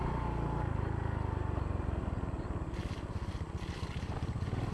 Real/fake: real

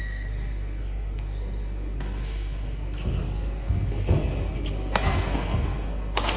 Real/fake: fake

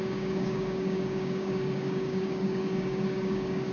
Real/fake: fake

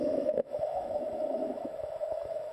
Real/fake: fake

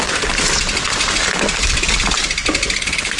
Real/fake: real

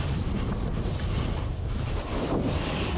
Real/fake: real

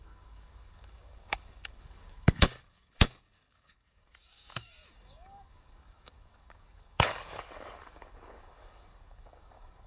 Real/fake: fake